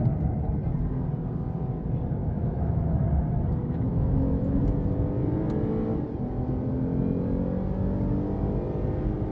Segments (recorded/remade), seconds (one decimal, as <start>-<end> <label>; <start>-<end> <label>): 0.0-2.2 recorded; 2.2-3.0 remade; 3.0-3.6 recorded; 3.6-4.6 remade; 4.6-9.3 recorded